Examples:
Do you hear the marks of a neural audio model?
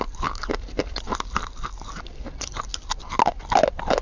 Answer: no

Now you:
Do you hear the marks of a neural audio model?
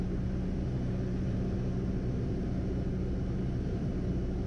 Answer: no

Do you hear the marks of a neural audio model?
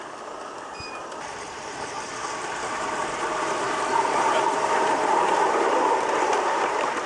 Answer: yes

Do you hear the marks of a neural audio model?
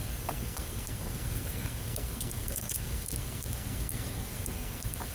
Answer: yes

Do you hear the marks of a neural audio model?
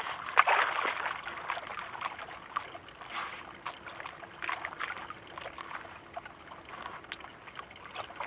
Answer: no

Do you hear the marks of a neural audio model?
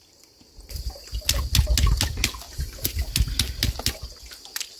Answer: no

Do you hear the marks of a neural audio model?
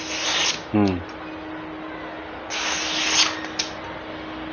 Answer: no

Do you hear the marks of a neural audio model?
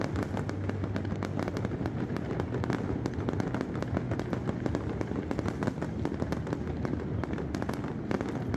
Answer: no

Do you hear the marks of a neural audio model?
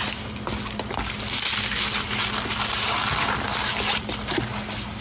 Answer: no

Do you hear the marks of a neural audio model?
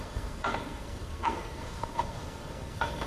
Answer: yes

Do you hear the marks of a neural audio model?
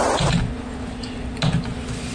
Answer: no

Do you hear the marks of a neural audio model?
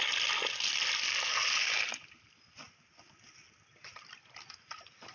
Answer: no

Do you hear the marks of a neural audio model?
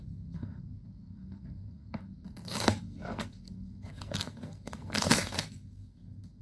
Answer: yes